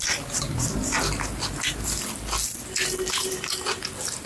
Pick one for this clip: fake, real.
real